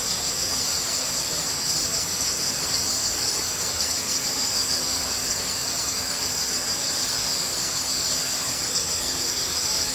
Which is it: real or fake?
fake